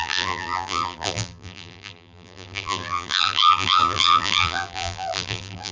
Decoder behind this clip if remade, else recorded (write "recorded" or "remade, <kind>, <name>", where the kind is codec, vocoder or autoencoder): remade, vocoder, BigVGAN v2